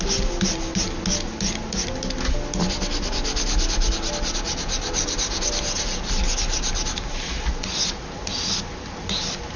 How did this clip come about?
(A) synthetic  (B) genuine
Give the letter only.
B